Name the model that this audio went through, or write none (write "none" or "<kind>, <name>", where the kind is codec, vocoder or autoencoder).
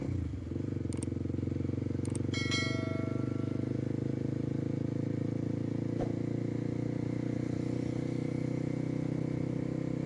none